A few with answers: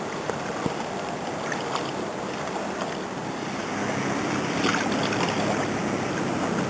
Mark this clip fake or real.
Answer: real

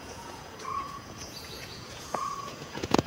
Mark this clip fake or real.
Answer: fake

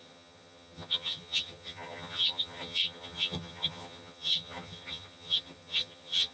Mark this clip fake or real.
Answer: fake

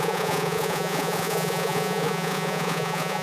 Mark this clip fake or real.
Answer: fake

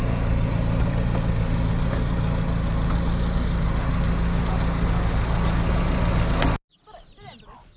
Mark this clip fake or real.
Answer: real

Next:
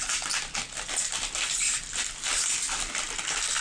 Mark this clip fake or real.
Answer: real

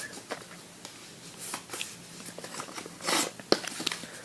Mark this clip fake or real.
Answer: real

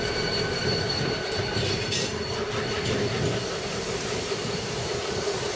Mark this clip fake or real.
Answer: fake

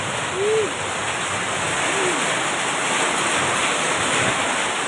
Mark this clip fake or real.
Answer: real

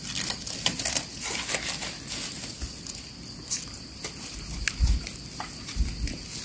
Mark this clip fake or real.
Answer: real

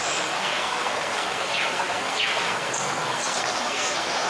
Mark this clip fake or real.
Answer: fake